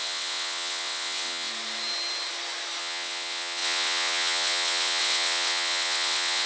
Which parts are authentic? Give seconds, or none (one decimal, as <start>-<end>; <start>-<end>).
1.5-2.8